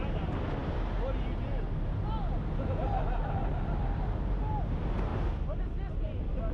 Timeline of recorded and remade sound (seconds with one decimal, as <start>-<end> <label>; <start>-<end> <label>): 0.0-6.5 recorded